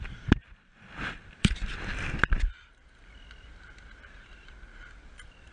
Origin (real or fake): fake